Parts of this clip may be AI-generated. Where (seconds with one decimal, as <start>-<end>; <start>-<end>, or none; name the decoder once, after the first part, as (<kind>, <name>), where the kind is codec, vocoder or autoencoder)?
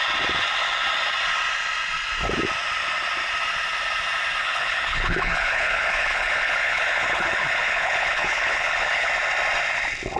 4.4-9.1 (codec, HILCodec)